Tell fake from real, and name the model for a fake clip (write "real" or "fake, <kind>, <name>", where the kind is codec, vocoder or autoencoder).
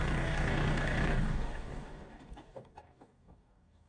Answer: fake, codec, DAC